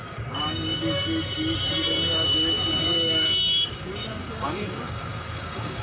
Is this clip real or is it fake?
fake